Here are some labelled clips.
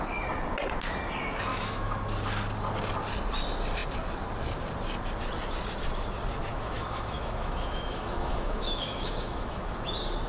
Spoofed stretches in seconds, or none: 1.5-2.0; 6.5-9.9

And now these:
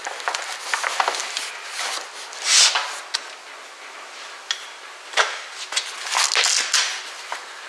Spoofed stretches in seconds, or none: none

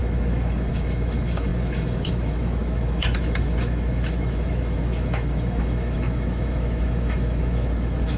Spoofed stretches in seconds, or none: 0.0-8.2